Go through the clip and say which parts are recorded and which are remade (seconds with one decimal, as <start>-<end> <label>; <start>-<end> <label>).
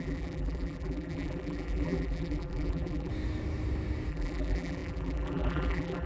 0.0-3.1 remade; 3.1-4.1 recorded; 4.1-6.1 remade